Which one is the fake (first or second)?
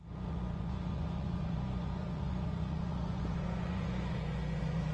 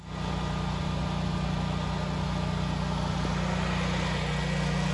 first